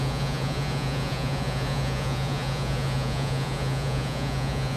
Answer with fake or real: fake